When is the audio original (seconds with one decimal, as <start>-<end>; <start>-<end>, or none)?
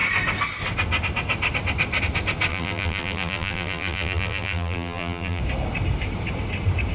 0.0-2.5; 5.4-6.9